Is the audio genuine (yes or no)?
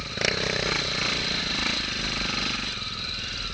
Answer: no